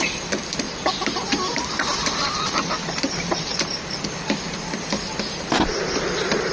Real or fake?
fake